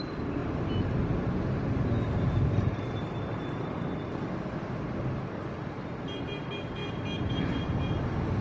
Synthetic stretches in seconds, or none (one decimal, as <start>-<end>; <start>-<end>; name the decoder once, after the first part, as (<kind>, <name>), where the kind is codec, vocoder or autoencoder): none